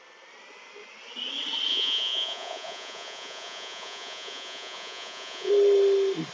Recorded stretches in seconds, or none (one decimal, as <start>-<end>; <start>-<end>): 0.0-1.7; 5.5-6.3